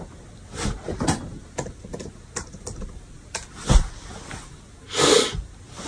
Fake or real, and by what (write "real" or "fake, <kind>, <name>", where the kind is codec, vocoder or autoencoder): real